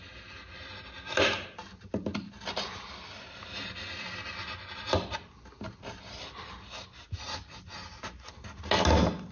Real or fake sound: real